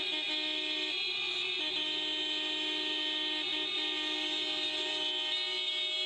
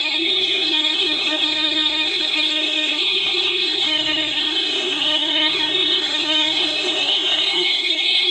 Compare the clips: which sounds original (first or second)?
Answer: first